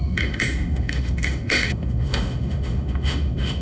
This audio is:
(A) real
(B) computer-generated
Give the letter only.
B